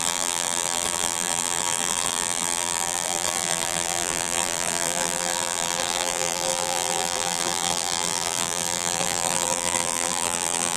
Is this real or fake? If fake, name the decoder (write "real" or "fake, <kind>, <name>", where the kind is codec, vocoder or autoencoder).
fake, vocoder, BigVGAN v2